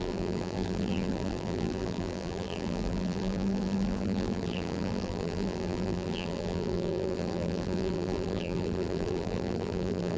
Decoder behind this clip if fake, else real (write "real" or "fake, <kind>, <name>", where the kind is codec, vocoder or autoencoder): fake, vocoder, BigVGAN v2